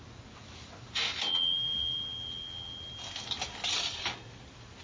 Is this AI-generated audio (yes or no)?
no